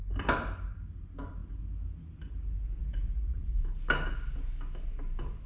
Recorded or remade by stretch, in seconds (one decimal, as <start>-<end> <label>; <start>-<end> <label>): 0.0-2.8 recorded; 2.8-3.6 remade; 3.6-5.5 recorded